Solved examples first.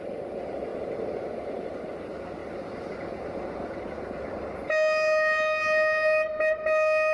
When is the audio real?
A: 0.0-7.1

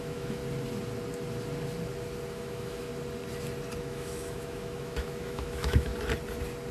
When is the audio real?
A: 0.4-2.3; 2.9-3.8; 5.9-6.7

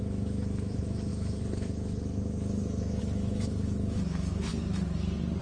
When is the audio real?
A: 4.5-5.4